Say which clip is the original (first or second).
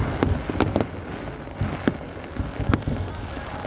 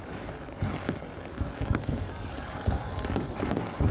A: first